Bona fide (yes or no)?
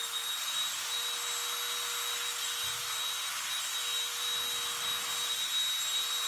yes